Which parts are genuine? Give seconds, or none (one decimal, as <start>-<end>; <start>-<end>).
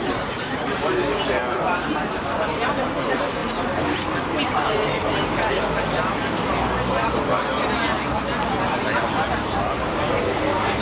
0.0-10.8